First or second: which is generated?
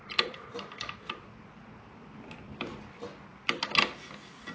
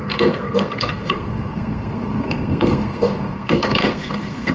second